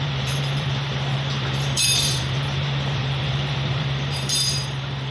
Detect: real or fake fake